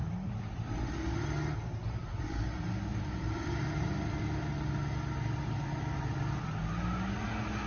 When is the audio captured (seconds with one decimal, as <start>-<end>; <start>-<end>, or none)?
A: 1.2-1.8; 2.4-2.9; 4.5-7.7